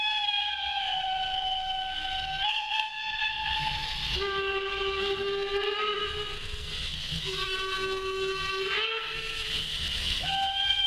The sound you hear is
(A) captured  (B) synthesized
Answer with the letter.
B